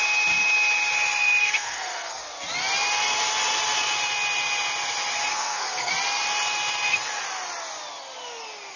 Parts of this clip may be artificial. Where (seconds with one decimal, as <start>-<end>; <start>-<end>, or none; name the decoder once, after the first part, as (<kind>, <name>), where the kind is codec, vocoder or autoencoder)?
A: 1.4-2.2 (codec, SNAC); 5.3-5.9